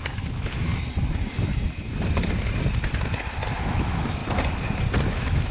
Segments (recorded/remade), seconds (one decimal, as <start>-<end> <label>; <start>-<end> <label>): 0.0-0.7 remade; 0.7-3.6 recorded; 3.6-4.2 remade; 4.2-5.1 recorded; 5.1-5.5 remade